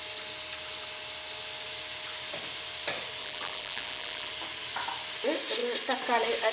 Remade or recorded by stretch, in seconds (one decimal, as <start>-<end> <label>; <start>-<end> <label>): 0.0-3.2 recorded; 3.2-4.3 remade; 4.3-6.5 recorded